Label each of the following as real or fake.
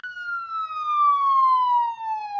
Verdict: real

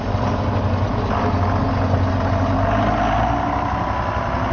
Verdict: real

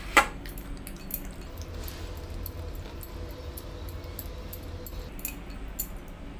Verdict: real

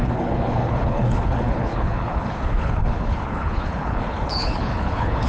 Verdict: fake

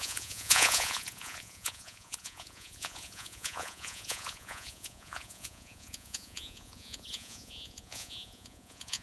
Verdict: fake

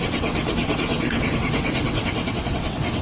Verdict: fake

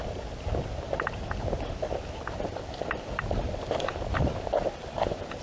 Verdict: real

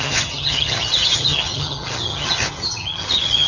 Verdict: fake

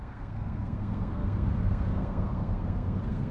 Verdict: fake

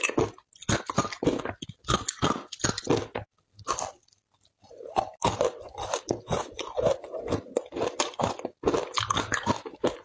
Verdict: real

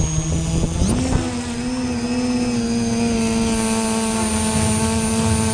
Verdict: real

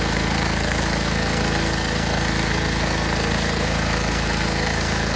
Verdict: fake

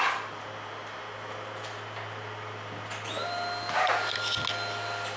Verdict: real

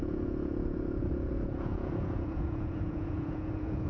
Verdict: fake